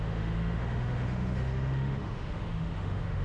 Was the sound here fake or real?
fake